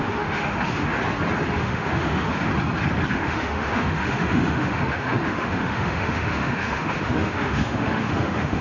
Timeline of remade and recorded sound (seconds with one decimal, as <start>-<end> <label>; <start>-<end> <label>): 0.0-1.0 remade; 1.0-1.6 recorded; 1.6-2.5 remade; 2.5-3.1 recorded; 3.1-8.6 remade